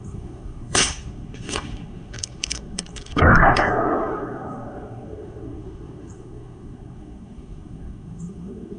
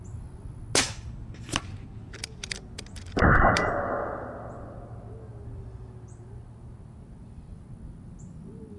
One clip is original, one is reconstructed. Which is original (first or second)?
second